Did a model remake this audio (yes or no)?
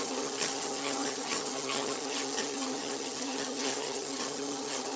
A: yes